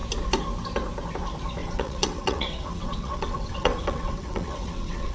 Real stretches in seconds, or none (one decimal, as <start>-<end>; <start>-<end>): 0.0-1.6